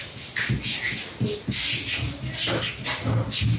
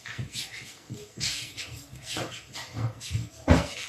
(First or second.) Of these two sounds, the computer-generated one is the second